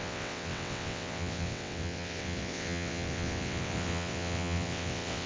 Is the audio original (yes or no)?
no